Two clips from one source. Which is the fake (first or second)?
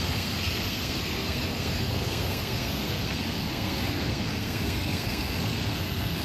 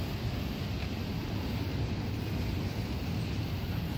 first